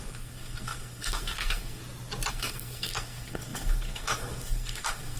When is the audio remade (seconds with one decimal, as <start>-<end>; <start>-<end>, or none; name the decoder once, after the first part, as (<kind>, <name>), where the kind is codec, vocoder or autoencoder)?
0.0-1.8 (codec, SNAC); 2.3-5.2